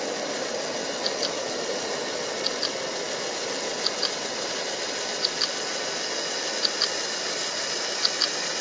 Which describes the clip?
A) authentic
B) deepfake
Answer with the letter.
A